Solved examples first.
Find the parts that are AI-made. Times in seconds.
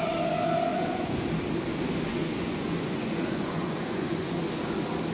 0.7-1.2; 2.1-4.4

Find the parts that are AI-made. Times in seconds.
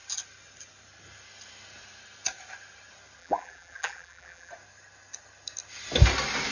3.2-4.5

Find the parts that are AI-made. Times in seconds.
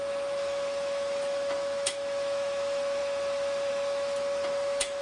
0.0-5.0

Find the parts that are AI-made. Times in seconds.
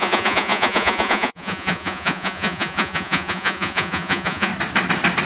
0.0-4.5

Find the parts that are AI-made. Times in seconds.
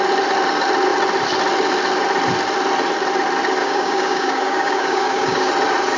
3.6-5.5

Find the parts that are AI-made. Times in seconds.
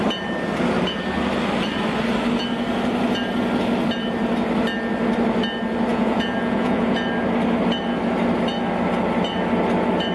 5.9-7.1